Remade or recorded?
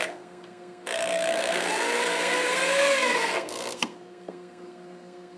remade